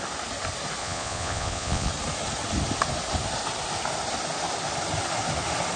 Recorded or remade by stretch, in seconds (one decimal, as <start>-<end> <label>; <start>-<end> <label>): 0.0-0.8 recorded; 0.8-1.9 remade; 1.9-5.8 recorded